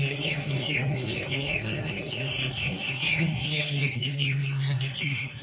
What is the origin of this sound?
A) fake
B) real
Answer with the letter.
A